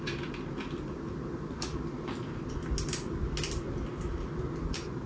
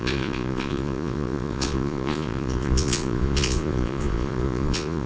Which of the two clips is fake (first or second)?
second